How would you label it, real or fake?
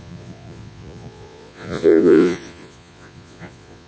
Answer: fake